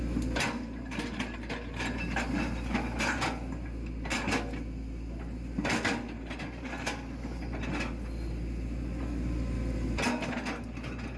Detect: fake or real real